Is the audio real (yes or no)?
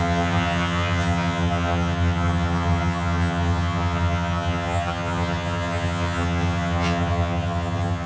no